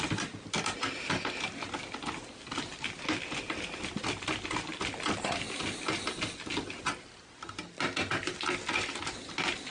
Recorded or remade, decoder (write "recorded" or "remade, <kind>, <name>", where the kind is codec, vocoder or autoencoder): recorded